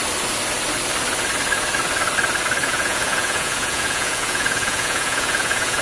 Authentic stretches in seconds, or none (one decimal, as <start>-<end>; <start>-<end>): 0.0-2.6

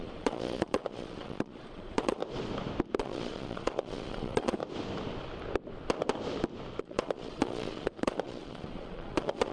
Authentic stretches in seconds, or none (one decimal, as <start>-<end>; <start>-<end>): 2.2-3.0; 4.6-6.8

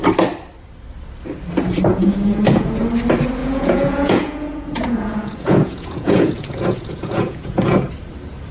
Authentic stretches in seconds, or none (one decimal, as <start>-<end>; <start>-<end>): 0.0-1.9; 2.8-3.4; 7.8-8.5

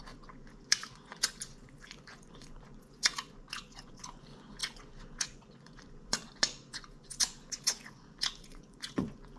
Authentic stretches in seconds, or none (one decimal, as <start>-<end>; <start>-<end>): none

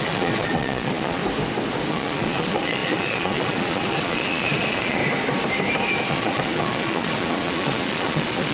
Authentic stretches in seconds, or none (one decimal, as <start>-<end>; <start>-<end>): 1.2-1.9; 5.0-6.1

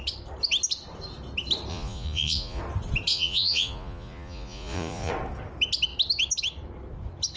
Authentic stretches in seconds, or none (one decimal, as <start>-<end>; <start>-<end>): 0.0-1.7; 2.6-3.1; 5.1-7.4

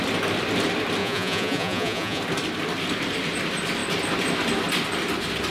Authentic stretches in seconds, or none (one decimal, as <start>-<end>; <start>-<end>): 0.0-1.0; 2.2-5.5